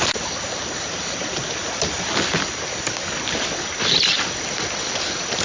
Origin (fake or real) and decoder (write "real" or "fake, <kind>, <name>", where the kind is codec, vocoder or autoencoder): real